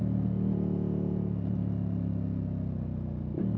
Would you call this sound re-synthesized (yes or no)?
no